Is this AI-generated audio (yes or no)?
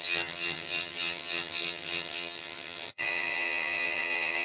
yes